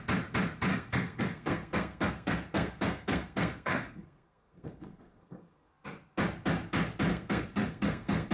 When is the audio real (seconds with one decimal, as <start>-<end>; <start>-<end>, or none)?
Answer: 0.0-0.7; 5.7-7.1